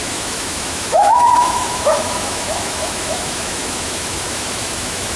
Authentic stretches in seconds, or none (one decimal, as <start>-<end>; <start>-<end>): none